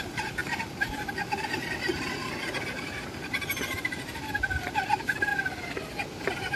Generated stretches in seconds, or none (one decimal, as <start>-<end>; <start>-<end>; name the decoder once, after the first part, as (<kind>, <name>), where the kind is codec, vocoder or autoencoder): 0.0-6.6 (vocoder, BigVGAN v2)